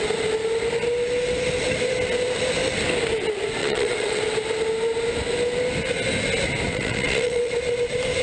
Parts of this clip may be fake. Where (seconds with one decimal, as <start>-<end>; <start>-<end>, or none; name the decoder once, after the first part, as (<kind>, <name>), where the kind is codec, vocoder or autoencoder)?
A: 3.6-4.2 (vocoder, WaveNeXt); 6.7-7.5

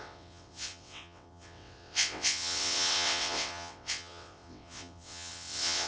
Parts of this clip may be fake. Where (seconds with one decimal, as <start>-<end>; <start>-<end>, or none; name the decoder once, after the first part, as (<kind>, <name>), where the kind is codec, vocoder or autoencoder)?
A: 0.0-5.9 (vocoder, WaveNeXt)

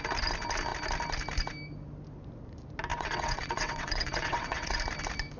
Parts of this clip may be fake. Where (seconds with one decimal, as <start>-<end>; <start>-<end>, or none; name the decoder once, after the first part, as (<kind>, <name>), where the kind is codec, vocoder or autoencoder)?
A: 2.9-4.8 (vocoder, WaveNeXt)

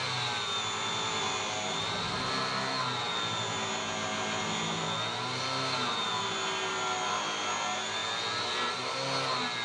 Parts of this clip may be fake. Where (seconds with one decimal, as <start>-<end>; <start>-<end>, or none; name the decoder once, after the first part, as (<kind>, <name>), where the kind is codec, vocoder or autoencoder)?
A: none

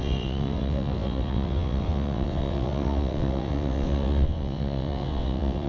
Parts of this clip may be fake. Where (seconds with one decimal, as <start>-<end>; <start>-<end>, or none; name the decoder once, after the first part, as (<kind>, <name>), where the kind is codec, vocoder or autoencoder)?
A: 0.0-5.7 (vocoder, WaveNeXt)

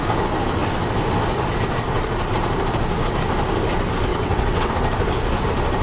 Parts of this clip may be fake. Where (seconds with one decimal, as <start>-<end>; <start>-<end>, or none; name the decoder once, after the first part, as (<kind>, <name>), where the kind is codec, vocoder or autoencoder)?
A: 4.1-4.7 (vocoder, WaveNeXt)